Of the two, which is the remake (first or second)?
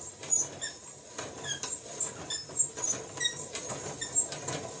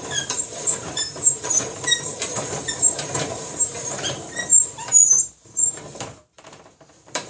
second